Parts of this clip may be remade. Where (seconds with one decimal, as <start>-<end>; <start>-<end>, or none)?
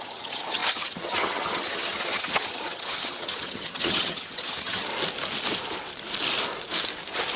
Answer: 0.0-4.9